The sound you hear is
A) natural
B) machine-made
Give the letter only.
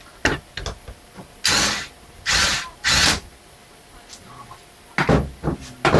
A